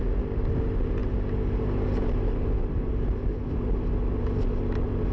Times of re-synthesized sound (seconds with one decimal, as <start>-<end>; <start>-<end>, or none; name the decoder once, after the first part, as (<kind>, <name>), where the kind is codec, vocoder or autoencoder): none

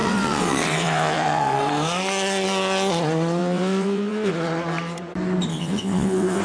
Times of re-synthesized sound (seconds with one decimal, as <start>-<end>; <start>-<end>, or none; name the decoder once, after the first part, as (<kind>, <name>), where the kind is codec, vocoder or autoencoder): 0.0-1.6 (vocoder, WaveNeXt); 3.4-4.3; 5.5-6.4

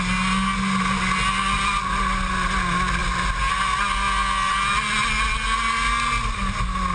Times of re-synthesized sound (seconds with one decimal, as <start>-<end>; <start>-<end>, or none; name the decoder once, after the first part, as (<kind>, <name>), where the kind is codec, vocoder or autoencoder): none

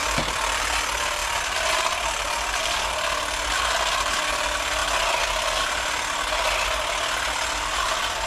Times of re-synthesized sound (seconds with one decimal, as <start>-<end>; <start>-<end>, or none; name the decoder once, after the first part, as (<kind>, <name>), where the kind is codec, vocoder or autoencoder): none

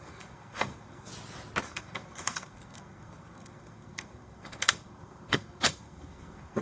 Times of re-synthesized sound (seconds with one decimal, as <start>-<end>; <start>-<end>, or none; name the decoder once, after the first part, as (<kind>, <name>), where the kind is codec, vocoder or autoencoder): 0.0-1.1 (codec, SNAC); 1.6-6.6

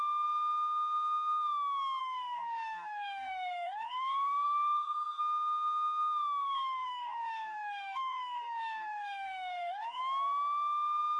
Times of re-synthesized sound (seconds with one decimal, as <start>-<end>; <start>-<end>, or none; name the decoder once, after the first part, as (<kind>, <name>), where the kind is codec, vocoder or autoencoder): 2.0-5.2 (codec, DAC); 6.4-10.0